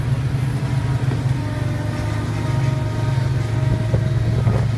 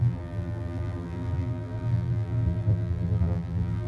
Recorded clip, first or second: first